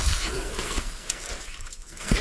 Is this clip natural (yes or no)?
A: no